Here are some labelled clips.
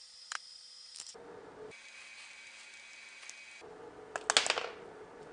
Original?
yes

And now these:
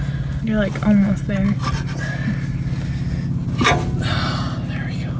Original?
yes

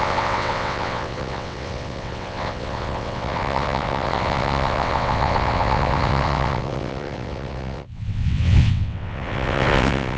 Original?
no